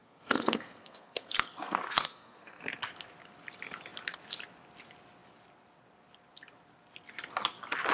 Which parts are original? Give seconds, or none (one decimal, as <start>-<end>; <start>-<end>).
2.6-7.9